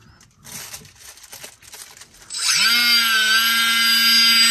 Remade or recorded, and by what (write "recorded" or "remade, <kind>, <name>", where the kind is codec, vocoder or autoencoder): recorded